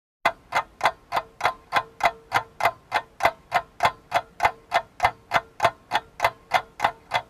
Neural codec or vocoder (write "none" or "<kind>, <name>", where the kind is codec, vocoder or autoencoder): none